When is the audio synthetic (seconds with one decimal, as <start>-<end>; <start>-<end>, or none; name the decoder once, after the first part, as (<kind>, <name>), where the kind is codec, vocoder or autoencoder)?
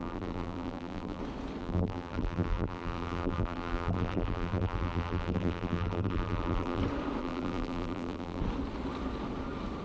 0.0-1.2 (vocoder, BigVGAN v2); 1.6-6.8; 7.2-8.4